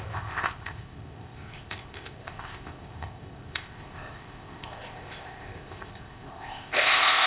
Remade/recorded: remade